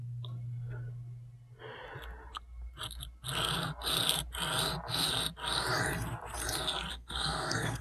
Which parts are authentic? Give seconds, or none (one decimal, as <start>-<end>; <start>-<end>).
0.0-6.9